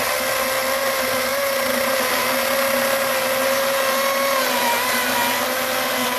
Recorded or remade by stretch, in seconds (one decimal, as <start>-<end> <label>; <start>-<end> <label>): 0.0-6.2 recorded